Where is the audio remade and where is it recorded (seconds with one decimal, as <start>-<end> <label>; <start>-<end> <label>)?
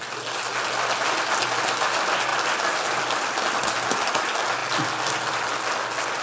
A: 0.0-6.2 recorded